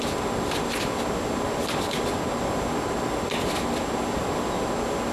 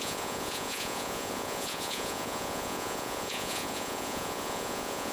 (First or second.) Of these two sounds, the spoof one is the second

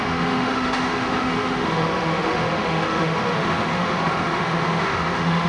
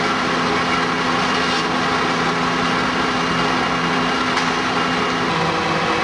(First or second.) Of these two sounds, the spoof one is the first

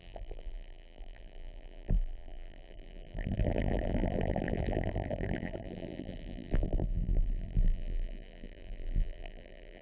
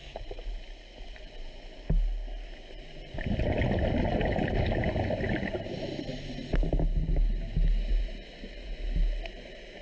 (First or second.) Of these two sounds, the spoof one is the first